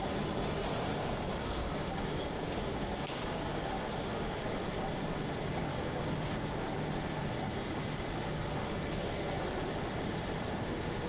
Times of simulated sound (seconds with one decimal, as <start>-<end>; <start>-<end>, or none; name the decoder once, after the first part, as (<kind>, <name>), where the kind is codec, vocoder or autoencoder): 0.9-3.6 (codec, DAC); 5.7-6.3